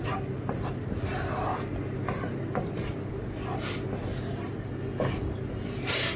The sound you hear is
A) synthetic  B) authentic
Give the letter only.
B